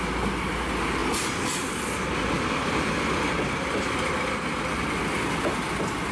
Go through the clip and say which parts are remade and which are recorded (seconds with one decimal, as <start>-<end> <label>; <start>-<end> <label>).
0.0-6.1 recorded